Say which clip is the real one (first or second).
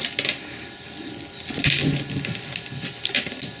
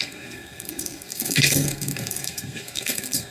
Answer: first